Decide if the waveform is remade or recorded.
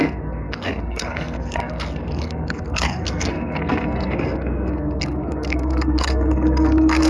remade